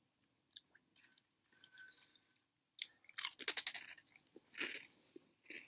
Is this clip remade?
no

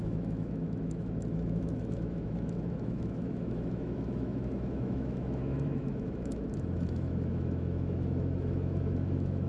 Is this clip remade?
yes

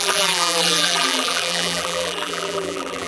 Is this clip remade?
yes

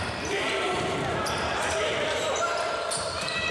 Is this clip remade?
yes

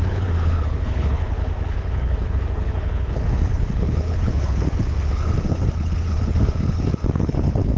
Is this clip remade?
yes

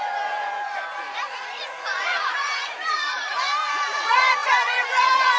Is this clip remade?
yes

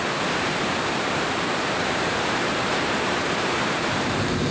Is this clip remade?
yes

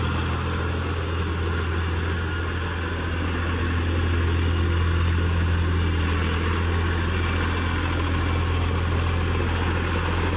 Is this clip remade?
no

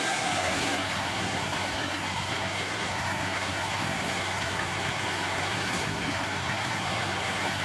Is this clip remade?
yes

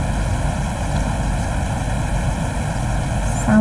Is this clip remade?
no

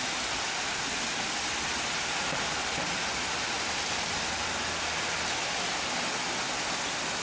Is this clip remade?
no